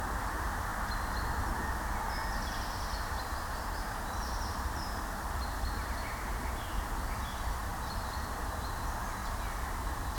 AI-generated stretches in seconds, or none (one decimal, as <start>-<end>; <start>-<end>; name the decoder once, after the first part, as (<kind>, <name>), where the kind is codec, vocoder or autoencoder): 0.0-0.7 (vocoder, BigVGAN v2); 3.2-7.7; 8.7-9.2; 9.7-10.2